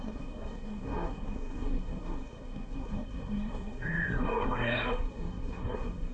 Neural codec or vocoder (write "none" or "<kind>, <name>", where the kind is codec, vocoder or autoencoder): codec, SNAC